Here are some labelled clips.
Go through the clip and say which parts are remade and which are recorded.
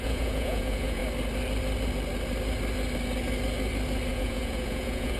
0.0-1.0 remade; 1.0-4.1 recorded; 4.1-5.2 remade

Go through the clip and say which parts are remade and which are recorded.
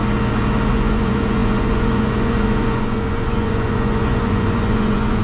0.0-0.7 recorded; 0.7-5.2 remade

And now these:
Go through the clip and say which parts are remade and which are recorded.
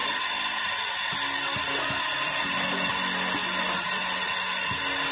0.0-5.1 recorded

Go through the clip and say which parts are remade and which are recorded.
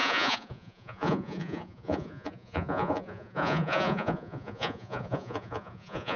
0.0-6.2 remade